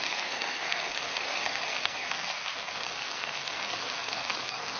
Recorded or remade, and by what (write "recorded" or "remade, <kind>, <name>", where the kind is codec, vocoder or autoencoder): remade, codec, SNAC